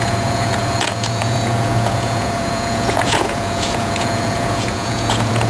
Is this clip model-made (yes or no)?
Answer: yes